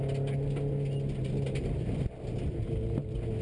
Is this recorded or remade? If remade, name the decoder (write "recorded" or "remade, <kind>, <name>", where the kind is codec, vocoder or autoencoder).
recorded